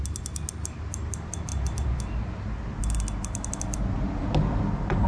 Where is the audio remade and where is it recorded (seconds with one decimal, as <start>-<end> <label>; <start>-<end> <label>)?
0.0-5.1 recorded